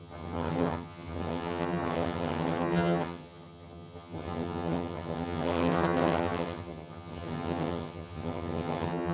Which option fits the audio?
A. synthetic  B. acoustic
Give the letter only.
A